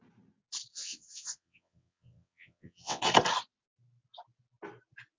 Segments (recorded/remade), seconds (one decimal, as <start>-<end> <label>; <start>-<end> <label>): 0.0-0.7 recorded; 0.7-3.0 remade; 3.0-5.2 recorded